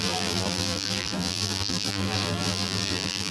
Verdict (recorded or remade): remade